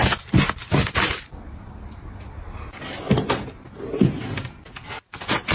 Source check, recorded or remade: recorded